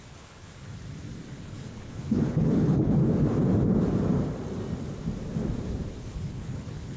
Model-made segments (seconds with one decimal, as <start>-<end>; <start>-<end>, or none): 0.0-0.7; 1.3-3.0; 6.0-7.0